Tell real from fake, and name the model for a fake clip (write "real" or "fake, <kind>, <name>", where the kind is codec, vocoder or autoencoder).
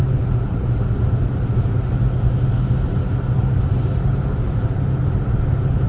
real